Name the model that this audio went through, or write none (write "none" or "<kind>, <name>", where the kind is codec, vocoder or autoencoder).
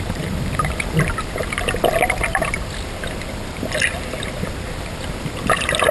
vocoder, BigVGAN v2